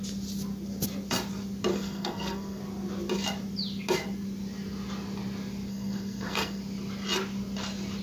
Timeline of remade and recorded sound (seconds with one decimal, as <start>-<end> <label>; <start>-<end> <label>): 0.0-1.7 recorded; 1.7-2.6 remade; 2.6-5.7 recorded; 5.7-6.6 remade; 6.6-8.0 recorded